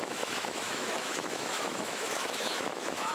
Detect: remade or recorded remade